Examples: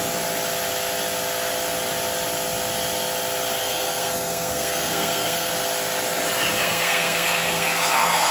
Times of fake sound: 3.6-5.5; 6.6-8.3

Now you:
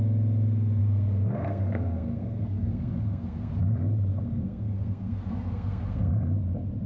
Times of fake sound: 0.8-3.5; 4.1-6.1

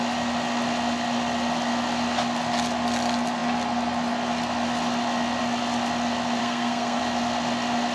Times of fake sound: 6.4-7.0

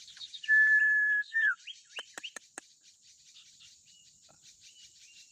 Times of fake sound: 0.8-1.6

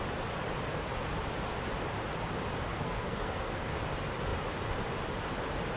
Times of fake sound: 2.7-3.8